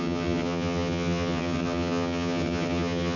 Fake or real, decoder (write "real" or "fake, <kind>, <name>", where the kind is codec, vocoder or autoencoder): fake, vocoder, HiFi-GAN